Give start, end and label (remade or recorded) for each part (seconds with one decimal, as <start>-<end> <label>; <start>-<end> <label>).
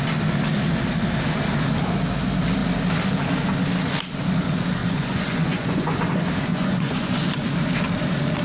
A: 0.0-4.8 recorded; 4.8-6.0 remade; 6.0-6.5 recorded; 6.5-7.2 remade; 7.2-8.4 recorded